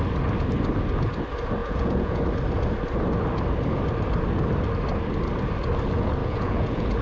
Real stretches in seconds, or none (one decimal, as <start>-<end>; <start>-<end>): 0.0-1.6; 2.2-6.2